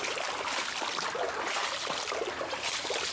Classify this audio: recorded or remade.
recorded